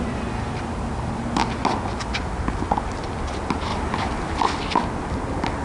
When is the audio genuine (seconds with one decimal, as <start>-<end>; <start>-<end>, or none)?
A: 0.0-5.6